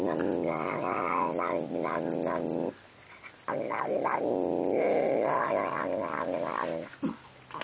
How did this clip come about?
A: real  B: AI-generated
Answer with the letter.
A